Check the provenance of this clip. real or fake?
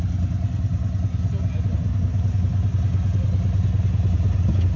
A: real